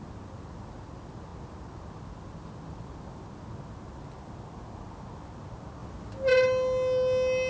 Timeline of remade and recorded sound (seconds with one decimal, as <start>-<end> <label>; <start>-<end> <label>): 0.0-7.5 recorded